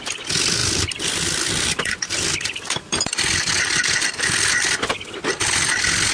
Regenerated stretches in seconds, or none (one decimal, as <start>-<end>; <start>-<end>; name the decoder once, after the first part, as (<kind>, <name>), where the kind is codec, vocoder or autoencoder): 0.6-4.1 (vocoder, BigVGAN v2)